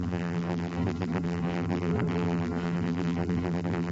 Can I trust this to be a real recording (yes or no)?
no